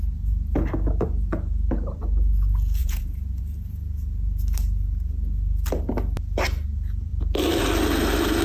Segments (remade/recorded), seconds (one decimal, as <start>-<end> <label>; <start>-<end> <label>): 0.0-2.8 recorded; 2.8-3.4 remade; 3.4-8.4 recorded